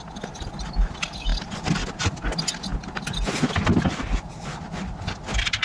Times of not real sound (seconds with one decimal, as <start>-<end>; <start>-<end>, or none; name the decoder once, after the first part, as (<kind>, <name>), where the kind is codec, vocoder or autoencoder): none